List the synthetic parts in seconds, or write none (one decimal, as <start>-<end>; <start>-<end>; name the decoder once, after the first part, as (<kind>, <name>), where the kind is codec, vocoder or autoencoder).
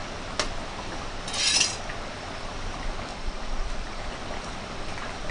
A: 3.1-4.1 (vocoder, BigVGAN v2)